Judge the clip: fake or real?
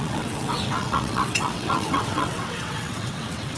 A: fake